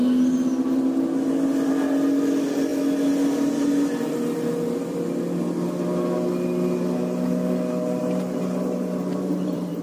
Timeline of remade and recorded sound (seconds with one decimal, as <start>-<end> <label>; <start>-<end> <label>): 0.0-8.0 recorded; 8.0-9.8 remade

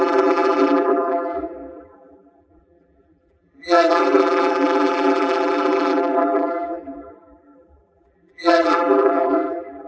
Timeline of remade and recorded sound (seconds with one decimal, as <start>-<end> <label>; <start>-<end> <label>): 0.0-9.9 remade

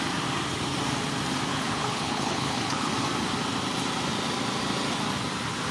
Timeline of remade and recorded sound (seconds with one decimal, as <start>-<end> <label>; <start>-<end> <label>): 0.0-1.5 recorded; 1.5-2.9 remade; 2.9-5.7 recorded